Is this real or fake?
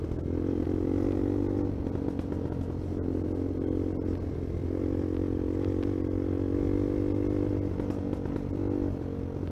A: real